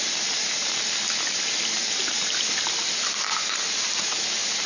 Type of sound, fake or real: real